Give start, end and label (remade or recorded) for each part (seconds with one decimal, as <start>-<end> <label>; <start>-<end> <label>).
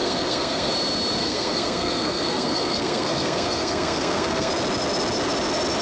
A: 0.0-0.7 remade; 0.7-1.2 recorded; 1.2-4.5 remade; 4.5-5.8 recorded